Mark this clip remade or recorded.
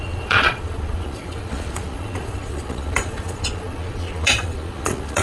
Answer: remade